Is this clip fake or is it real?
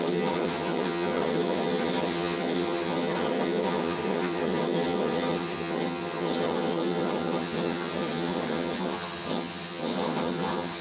fake